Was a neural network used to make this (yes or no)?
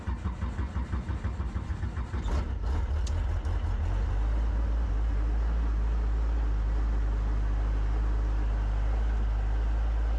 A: no